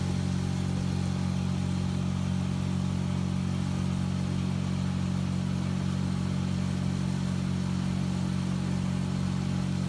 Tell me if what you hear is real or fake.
real